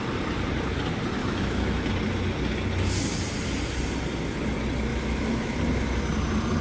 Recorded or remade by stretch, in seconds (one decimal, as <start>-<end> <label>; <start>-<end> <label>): 0.0-1.2 recorded; 1.2-1.9 remade; 1.9-4.9 recorded; 4.9-5.6 remade; 5.6-6.6 recorded